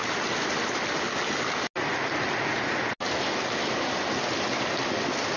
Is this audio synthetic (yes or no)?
no